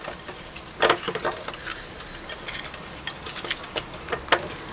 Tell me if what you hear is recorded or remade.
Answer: recorded